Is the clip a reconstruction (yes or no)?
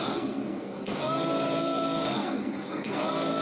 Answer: yes